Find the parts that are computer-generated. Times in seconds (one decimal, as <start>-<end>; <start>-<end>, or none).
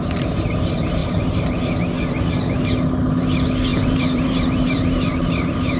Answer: 1.0-1.6; 3.7-5.1